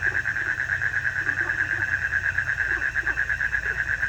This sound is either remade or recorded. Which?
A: recorded